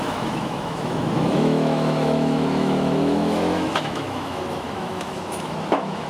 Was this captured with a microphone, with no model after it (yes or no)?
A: no